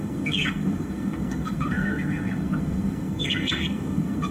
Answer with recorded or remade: remade